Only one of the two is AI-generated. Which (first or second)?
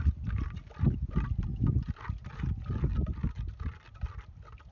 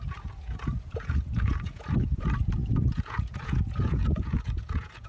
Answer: second